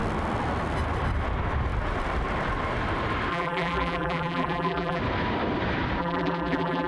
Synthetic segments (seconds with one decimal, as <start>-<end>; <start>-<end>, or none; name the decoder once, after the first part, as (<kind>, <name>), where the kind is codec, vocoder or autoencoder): 3.3-5.0 (vocoder, BigVGAN v2); 6.0-6.9